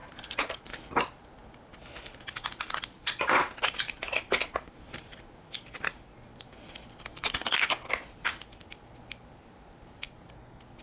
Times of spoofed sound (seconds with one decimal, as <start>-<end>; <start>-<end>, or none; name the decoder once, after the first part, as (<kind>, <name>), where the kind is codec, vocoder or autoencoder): none